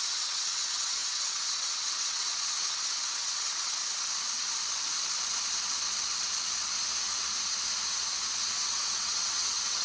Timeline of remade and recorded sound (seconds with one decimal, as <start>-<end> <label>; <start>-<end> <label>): 0.0-3.8 remade; 3.8-8.4 recorded; 8.4-9.8 remade